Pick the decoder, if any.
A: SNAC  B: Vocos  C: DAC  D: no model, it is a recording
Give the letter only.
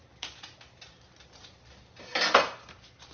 D